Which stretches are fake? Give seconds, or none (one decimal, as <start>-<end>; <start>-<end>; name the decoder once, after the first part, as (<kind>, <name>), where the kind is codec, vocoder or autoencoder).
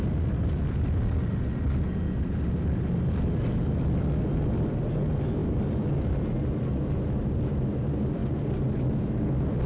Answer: none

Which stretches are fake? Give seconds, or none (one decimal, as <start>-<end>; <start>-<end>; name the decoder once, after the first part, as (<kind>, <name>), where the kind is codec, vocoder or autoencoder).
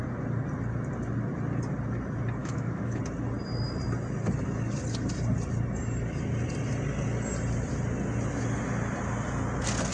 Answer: 2.4-3.0 (autoencoder, DAC-VAE)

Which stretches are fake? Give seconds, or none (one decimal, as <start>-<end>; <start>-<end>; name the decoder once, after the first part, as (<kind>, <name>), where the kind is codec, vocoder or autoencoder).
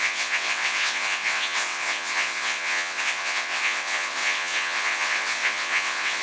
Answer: 0.0-6.2 (vocoder, WaveNeXt)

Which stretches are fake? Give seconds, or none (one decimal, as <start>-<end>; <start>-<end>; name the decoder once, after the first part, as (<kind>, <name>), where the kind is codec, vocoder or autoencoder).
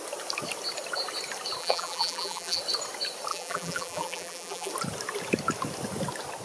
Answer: 1.6-2.6 (vocoder, BigVGAN v2); 3.3-4.7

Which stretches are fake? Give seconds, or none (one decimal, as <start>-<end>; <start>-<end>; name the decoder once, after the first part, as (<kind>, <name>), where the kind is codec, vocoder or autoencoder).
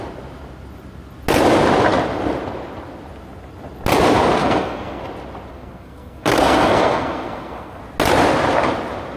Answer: 4.4-5.0 (codec, SNAC); 5.5-7.8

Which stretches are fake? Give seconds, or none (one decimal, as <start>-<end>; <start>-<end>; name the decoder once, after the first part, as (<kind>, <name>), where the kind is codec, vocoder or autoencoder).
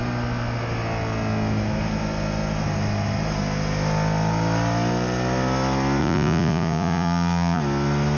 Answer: 6.0-7.6 (vocoder, Vocos)